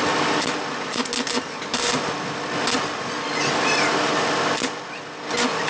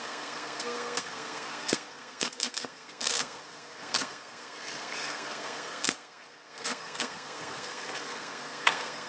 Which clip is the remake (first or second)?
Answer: second